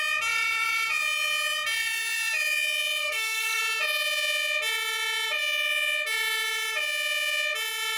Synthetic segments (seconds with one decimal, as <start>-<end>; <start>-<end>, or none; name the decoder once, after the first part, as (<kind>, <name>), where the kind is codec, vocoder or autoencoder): 3.0-3.6 (codec, SNAC)